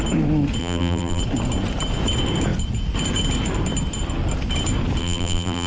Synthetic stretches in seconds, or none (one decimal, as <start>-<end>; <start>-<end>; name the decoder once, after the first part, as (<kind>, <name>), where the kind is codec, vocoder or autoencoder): 0.6-1.2 (vocoder, BigVGAN v2); 5.0-5.7